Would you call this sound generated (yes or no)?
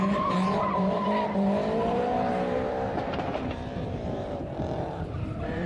yes